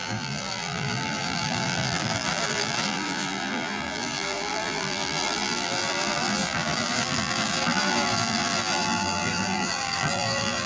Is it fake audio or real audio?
fake